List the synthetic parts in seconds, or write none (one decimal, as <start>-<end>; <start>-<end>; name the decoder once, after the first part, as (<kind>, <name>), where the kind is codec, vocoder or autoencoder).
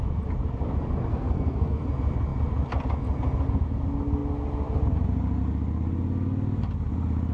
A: 1.1-1.9 (codec, SNAC)